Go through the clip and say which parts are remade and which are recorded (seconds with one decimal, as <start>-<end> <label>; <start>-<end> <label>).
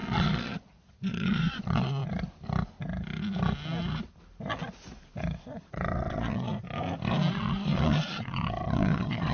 0.0-2.0 remade; 2.0-5.7 recorded; 5.7-6.5 remade; 6.5-7.3 recorded; 7.3-9.3 remade